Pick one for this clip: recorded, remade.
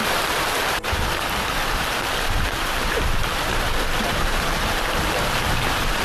remade